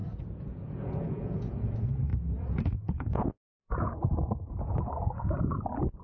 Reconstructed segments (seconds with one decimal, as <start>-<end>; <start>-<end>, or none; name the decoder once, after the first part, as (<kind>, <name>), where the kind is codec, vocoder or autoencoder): 0.0-1.7 (vocoder, Vocos); 2.1-5.5